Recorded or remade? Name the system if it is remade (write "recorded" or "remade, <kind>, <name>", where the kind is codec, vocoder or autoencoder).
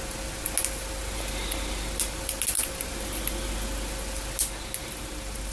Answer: recorded